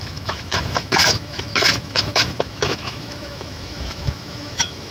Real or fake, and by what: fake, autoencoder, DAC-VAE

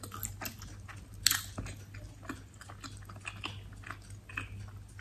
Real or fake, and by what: real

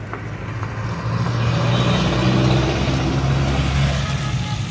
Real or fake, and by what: real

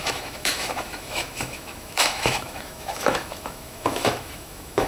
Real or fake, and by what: fake, autoencoder, DAC-VAE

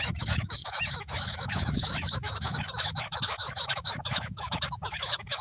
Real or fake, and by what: fake, autoencoder, DAC-VAE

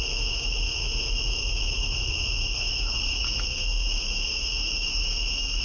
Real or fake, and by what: fake, autoencoder, DAC-VAE